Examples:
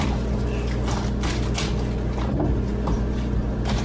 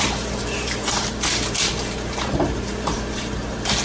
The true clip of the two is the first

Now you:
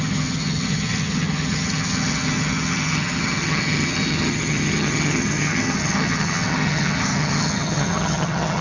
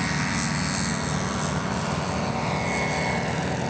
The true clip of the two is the second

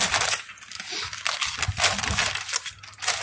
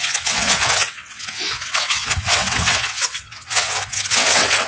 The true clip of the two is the first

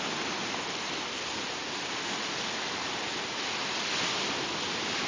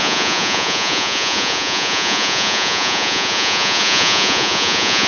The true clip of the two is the first